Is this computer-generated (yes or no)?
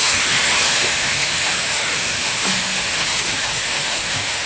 yes